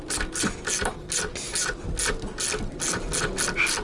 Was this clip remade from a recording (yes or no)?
no